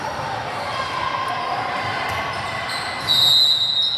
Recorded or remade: recorded